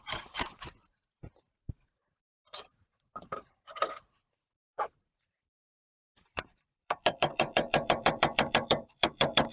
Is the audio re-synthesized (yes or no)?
yes